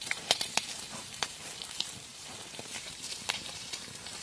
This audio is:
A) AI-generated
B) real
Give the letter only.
A